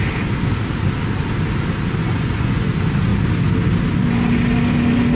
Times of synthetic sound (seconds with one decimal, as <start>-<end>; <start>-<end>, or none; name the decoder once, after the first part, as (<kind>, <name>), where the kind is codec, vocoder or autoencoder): 2.0-2.7 (vocoder, Vocos)